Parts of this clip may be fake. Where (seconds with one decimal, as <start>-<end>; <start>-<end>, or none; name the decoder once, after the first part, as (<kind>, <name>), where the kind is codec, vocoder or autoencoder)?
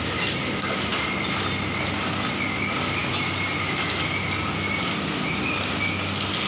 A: none